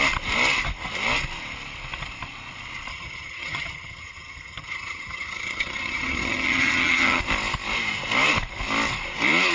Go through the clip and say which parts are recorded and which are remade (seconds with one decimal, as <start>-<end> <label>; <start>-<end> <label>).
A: 0.0-2.9 recorded; 2.9-7.2 remade; 7.2-9.5 recorded